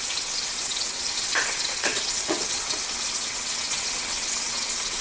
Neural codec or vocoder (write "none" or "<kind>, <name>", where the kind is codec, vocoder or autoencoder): vocoder, WaveNeXt